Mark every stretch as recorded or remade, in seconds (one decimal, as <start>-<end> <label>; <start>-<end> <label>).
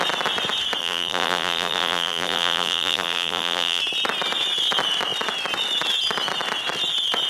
0.0-0.8 recorded; 0.8-3.8 remade; 3.8-7.3 recorded